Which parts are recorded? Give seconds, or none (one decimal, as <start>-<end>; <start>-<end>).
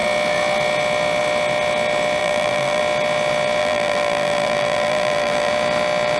0.0-2.2; 2.8-3.6; 5.5-6.2